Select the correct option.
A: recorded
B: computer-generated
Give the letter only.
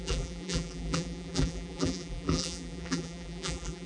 B